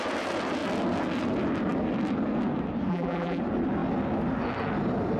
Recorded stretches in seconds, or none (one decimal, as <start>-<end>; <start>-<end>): 0.0-2.9; 3.4-5.2